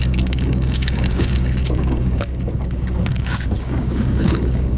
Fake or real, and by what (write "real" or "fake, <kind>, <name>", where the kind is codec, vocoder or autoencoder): fake, codec, DAC